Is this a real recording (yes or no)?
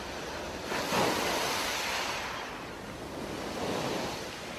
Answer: yes